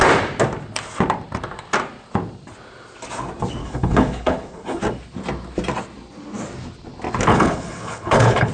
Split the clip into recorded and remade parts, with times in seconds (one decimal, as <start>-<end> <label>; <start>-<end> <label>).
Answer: 0.0-3.6 recorded; 3.6-4.8 remade; 4.8-7.3 recorded; 7.3-8.5 remade